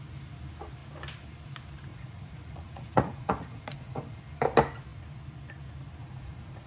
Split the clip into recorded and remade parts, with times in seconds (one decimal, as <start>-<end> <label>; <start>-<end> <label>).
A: 0.0-1.9 recorded; 1.9-4.2 remade; 4.2-6.0 recorded; 6.0-6.7 remade